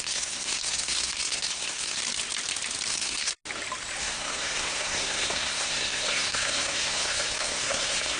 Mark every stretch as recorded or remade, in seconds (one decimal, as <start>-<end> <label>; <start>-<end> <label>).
0.0-2.0 remade; 2.0-2.9 recorded; 2.9-3.3 remade; 3.3-4.0 recorded; 4.0-8.2 remade